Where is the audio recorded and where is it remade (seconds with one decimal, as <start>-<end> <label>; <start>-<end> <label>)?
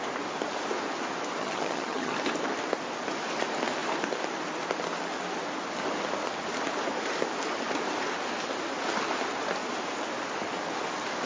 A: 0.0-1.4 recorded; 1.4-2.1 remade; 2.1-11.3 recorded